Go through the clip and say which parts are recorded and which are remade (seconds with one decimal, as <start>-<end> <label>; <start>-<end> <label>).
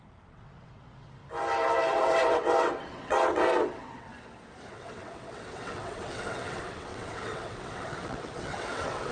0.0-1.2 remade; 1.2-1.9 recorded; 1.9-4.1 remade; 4.1-4.7 recorded; 4.7-9.1 remade